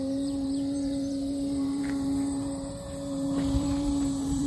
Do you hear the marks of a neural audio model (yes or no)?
yes